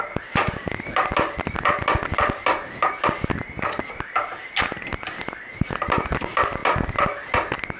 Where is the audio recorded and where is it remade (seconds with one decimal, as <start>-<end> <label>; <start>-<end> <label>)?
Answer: 0.0-7.8 recorded